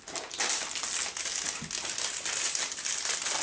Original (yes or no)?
yes